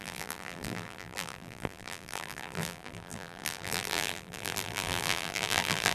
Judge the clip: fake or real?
fake